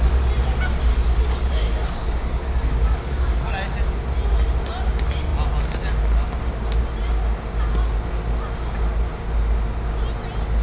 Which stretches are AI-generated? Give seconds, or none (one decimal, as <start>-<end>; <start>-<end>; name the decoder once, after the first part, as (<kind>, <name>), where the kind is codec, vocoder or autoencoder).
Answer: 0.9-3.5 (codec, DAC)